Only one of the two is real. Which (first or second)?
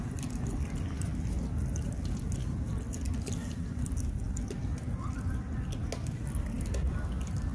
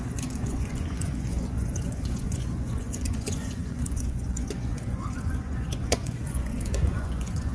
first